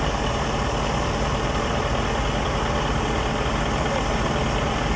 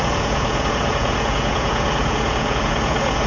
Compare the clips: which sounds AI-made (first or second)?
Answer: second